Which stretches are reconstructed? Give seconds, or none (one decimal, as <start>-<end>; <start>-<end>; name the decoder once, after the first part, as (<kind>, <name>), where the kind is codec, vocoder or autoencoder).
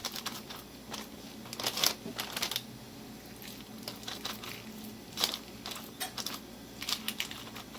none